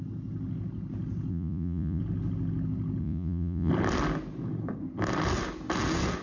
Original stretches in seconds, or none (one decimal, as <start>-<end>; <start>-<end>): 0.0-1.3; 2.0-3.0; 3.7-6.2